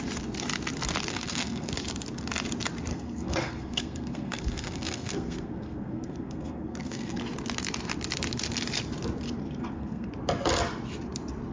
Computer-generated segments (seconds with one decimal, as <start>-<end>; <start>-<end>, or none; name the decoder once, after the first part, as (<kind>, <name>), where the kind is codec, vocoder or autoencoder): 1.1-1.7 (codec, SNAC); 2.9-7.2; 9.4-10.1